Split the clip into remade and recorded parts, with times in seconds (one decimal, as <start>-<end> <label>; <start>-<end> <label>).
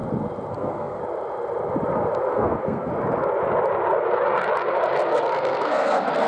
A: 0.0-0.5 recorded; 0.5-1.0 remade; 1.0-2.3 recorded; 2.3-2.9 remade; 2.9-5.1 recorded; 5.1-6.3 remade